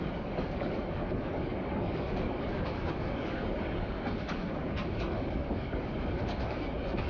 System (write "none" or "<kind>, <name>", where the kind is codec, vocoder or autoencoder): codec, DAC